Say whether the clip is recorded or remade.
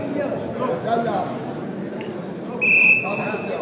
recorded